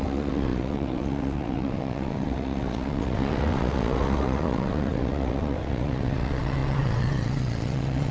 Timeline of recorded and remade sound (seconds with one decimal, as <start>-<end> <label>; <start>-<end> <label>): 0.0-8.1 remade